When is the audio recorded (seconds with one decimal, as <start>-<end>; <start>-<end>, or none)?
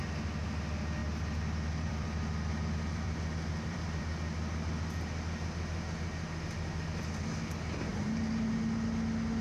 0.0-1.0; 4.0-9.4